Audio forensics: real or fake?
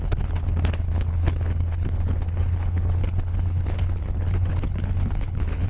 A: fake